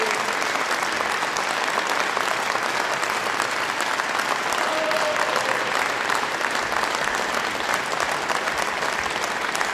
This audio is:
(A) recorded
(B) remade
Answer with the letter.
A